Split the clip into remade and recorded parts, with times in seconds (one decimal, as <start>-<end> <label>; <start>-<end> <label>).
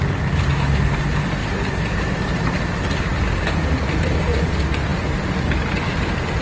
0.0-1.4 recorded; 1.4-2.6 remade; 2.6-6.4 recorded